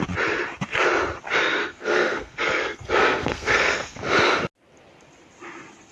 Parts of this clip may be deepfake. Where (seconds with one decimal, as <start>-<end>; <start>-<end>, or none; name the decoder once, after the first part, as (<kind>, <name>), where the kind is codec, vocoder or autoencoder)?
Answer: 1.6-4.0 (codec, SNAC)